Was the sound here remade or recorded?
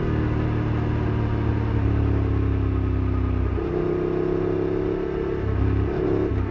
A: recorded